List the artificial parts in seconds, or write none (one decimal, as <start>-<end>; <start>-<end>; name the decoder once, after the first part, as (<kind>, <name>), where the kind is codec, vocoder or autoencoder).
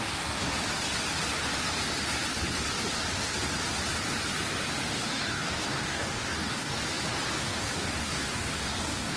0.0-0.5 (codec, DAC); 4.9-6.8; 7.4-9.2